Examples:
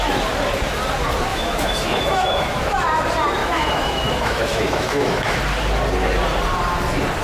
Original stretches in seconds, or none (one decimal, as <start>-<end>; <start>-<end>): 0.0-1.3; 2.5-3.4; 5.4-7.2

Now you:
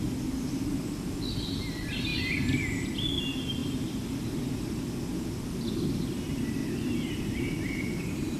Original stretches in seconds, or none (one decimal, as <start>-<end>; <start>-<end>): 0.0-8.4

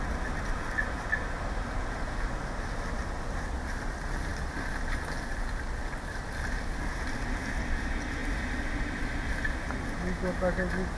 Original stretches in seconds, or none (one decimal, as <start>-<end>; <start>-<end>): 0.0-11.0

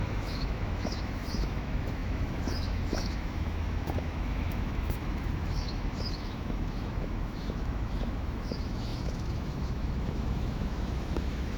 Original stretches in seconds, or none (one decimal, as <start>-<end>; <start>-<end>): none

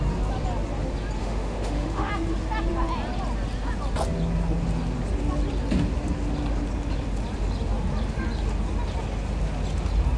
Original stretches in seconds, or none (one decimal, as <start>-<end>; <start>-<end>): 0.0-1.2; 2.1-10.2

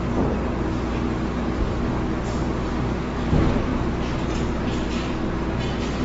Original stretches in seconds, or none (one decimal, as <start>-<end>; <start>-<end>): 0.0-6.0